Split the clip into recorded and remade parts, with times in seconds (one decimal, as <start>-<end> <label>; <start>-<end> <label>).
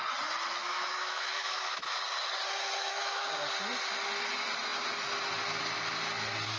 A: 0.0-0.6 recorded; 0.6-2.0 remade; 2.0-2.8 recorded; 2.8-3.3 remade; 3.3-6.6 recorded